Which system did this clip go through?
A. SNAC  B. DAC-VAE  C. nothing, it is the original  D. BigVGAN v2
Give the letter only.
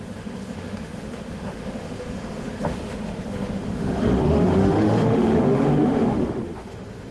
B